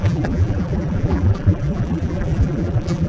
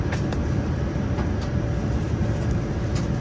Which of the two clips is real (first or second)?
second